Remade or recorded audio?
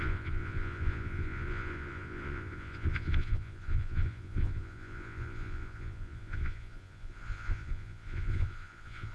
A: remade